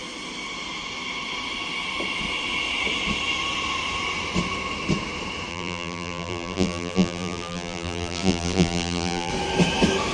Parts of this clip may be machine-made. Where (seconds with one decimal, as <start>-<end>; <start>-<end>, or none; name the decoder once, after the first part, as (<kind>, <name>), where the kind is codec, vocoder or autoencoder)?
5.5-9.3 (vocoder, BigVGAN v2)